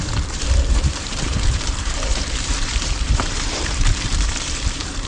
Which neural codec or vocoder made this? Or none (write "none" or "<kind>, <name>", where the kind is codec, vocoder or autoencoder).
vocoder, BigVGAN v2